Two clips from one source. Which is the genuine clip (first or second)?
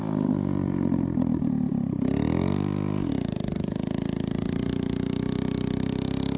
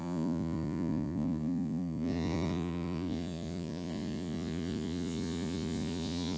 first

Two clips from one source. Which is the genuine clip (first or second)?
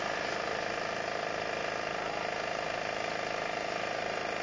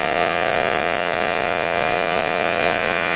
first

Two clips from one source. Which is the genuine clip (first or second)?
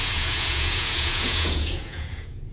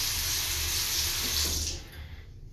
second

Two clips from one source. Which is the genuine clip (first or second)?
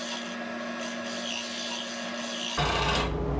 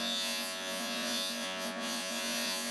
first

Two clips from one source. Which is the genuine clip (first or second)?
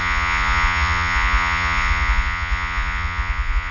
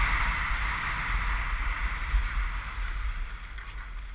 second